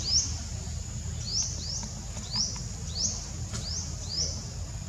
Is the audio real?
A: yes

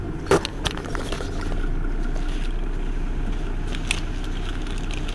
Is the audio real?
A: yes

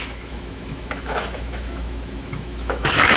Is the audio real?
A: no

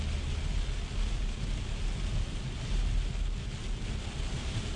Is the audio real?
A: yes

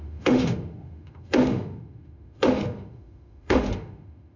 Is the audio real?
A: no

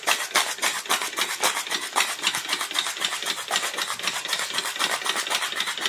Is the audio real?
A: yes